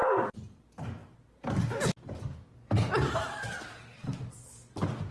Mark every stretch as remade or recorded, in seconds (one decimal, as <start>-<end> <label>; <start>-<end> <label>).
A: 0.0-5.1 recorded